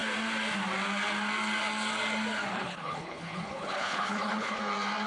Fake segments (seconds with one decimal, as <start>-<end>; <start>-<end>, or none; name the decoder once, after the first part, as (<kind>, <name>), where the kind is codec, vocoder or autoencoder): 2.5-4.6 (codec, HILCodec)